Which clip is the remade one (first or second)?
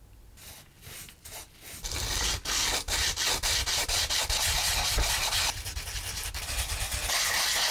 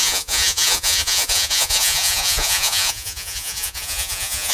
second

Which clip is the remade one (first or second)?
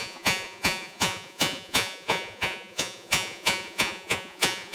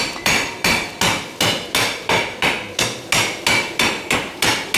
first